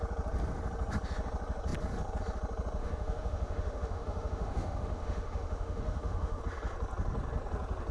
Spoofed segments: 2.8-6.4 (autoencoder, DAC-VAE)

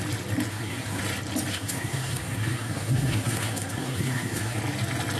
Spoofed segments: 0.5-1.0 (codec, SNAC); 1.5-4.6

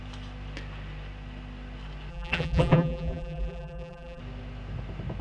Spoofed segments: 2.1-4.2 (vocoder, BigVGAN v2)

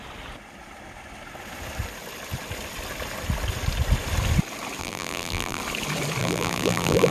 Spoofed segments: 4.8-5.6 (vocoder, BigVGAN v2); 6.2-7.1

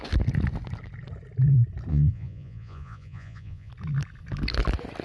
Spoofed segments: 1.9-3.7 (vocoder, Vocos)

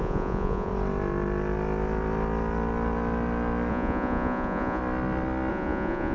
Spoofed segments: 0.0-0.7 (vocoder, Vocos); 3.7-4.8; 5.5-6.1

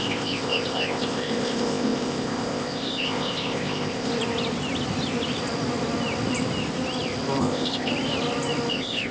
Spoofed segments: 0.0-4.1 (codec, ZipCodec); 7.4-7.9; 8.7-9.1

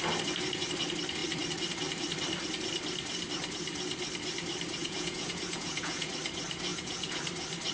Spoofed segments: 4.8-6.1 (vocoder, Vocos); 6.7-7.2